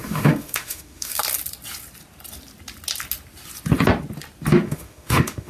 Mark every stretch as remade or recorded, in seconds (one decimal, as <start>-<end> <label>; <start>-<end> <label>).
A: 0.0-1.2 remade; 1.2-4.5 recorded; 4.5-5.5 remade